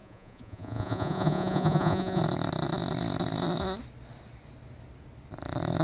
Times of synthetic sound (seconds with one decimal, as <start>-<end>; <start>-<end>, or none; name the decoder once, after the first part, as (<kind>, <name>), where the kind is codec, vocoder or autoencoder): 0.0-2.2 (vocoder, Vocos)